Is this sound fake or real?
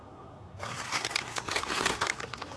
fake